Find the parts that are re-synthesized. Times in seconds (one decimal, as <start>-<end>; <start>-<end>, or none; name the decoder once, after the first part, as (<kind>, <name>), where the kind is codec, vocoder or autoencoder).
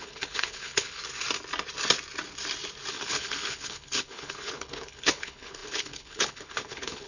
0.0-1.0 (codec, HILCodec); 2.9-7.1